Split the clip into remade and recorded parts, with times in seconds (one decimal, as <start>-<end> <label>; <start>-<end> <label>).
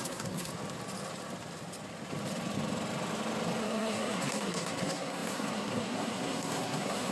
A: 0.0-0.5 remade; 0.5-3.6 recorded; 3.6-7.1 remade